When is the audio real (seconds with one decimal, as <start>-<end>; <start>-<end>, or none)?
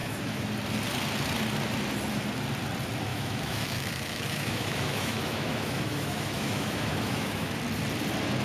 0.5-3.1; 7.6-8.4